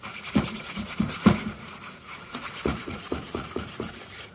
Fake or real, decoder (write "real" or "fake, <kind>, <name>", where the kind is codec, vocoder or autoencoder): fake, vocoder, Vocos